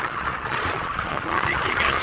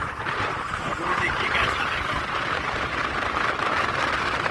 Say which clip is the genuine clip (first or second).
second